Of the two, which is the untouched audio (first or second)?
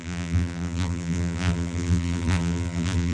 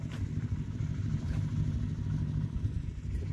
second